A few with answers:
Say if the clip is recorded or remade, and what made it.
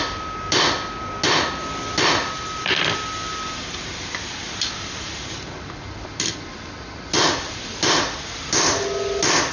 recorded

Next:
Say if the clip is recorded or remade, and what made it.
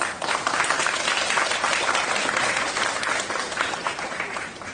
recorded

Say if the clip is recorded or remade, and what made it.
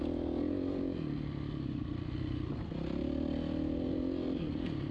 recorded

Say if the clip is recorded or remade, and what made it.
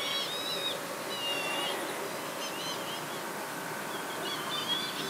recorded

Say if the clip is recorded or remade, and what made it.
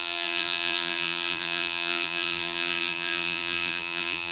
remade, vocoder, BigVGAN v2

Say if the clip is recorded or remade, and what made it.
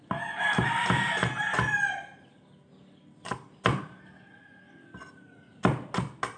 recorded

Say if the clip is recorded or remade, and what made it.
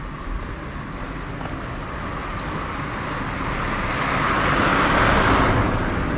recorded